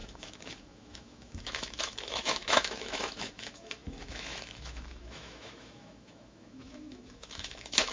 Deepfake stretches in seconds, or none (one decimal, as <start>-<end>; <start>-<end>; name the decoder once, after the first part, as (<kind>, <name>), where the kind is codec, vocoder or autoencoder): 0.0-7.9 (autoencoder, DAC-VAE)